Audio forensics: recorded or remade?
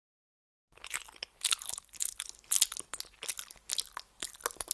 recorded